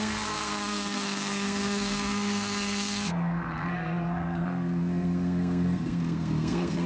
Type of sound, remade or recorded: remade